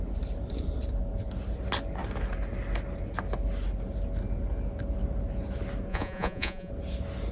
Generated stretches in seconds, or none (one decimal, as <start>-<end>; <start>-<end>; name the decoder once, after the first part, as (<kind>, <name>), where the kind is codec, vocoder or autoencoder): 5.9-6.7 (vocoder, Vocos)